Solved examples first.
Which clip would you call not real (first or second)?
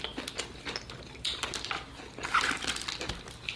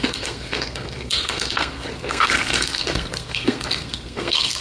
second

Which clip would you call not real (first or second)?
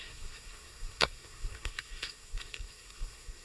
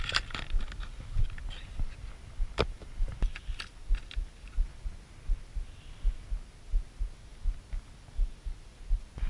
first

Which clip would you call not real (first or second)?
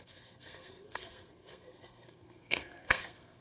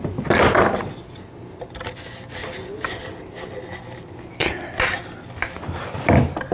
first